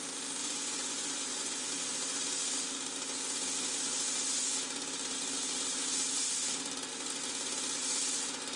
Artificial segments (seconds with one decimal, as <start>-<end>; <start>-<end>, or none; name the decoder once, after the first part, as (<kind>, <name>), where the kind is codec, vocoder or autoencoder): 0.4-1.7 (vocoder, Vocos)